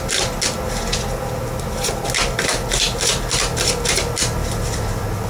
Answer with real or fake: real